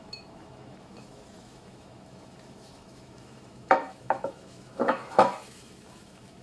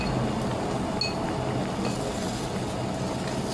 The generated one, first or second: first